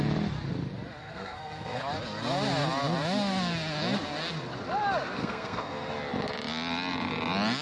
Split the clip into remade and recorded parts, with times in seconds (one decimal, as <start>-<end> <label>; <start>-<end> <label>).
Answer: 0.0-1.0 recorded; 1.0-1.8 remade; 1.8-5.2 recorded; 5.2-5.9 remade; 5.9-7.6 recorded